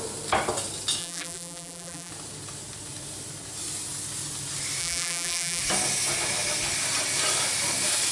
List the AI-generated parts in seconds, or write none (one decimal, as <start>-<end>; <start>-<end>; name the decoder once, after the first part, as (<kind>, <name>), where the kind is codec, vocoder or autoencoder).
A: 1.0-2.1 (vocoder, BigVGAN v2); 4.8-5.6